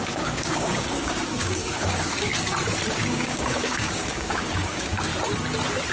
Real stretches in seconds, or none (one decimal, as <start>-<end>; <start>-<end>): 2.3-2.9; 5.1-5.9